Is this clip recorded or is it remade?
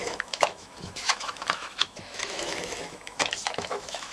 remade